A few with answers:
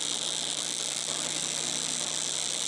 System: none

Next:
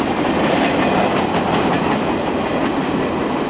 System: none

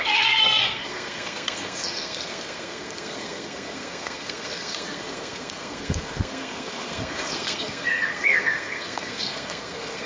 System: codec, SNAC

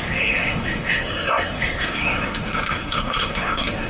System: codec, SNAC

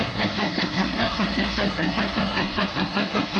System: codec, SNAC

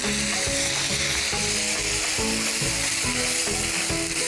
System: none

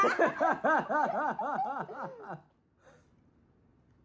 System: none